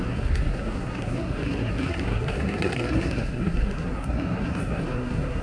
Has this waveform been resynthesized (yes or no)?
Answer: yes